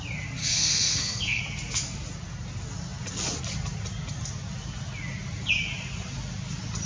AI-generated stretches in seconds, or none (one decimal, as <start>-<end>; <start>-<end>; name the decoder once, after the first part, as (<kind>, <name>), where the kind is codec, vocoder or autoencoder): 0.4-1.4 (codec, SNAC)